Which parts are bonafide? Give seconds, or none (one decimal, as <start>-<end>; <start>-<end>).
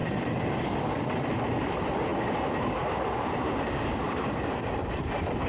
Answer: 0.0-5.5